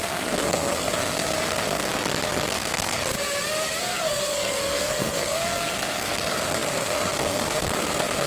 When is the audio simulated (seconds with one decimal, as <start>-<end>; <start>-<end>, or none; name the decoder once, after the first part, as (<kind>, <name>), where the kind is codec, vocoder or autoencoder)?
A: 0.0-1.9 (codec, SNAC); 2.5-3.0; 3.8-8.3

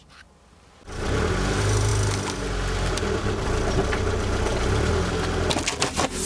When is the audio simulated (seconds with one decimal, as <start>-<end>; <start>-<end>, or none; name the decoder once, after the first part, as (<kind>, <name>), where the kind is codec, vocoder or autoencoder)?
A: none

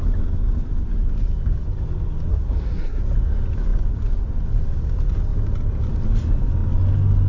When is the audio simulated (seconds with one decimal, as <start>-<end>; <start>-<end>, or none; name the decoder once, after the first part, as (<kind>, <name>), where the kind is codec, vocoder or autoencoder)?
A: 2.3-3.0 (codec, SNAC)

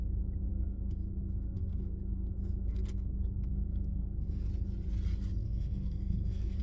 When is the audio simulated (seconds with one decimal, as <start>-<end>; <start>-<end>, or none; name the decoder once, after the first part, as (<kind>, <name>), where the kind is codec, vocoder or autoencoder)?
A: 0.5-4.5 (codec, SNAC); 5.4-6.6